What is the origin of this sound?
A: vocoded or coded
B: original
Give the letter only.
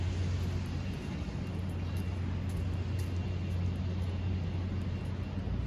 B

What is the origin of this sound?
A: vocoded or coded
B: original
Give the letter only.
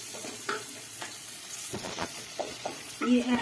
A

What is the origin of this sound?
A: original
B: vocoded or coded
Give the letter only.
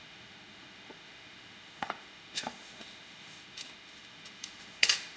B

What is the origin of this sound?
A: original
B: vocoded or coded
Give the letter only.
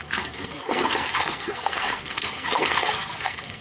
B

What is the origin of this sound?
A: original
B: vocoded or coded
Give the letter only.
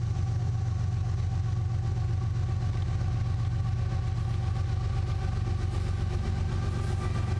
A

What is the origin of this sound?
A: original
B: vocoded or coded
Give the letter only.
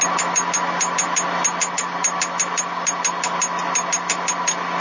A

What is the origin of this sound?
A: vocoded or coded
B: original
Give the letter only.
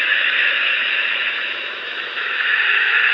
A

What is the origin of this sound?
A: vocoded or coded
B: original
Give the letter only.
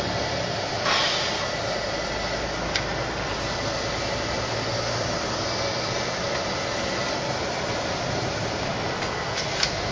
B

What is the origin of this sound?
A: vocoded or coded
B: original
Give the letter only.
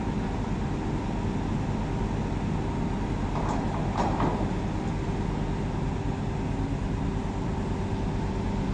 B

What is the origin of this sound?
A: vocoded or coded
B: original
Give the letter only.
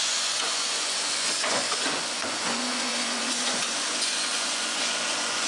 A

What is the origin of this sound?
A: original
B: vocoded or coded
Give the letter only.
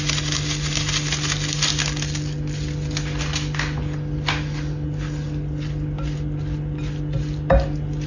A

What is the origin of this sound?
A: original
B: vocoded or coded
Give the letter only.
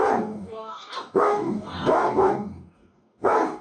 B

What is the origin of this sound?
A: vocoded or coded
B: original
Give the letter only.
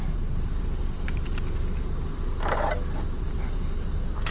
A